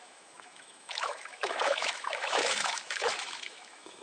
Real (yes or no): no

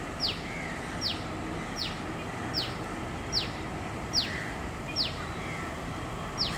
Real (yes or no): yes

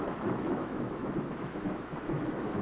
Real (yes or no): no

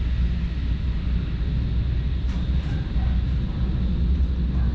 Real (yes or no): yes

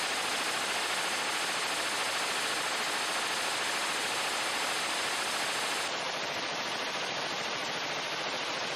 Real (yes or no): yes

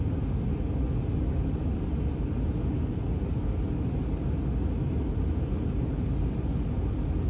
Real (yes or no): yes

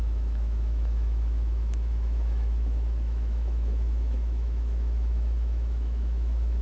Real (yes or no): no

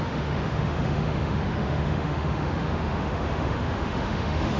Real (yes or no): no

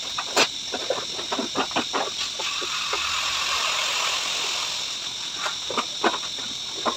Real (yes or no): yes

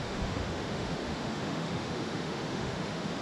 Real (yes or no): no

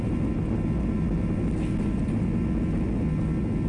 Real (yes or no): yes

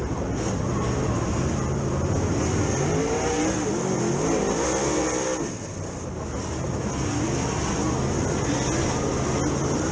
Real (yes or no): yes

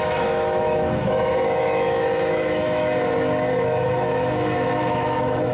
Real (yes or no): no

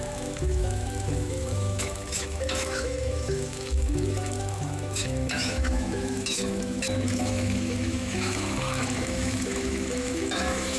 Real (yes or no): no